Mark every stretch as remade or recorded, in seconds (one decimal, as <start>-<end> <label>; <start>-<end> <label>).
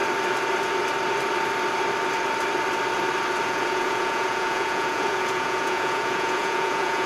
0.0-3.4 recorded; 3.4-7.1 remade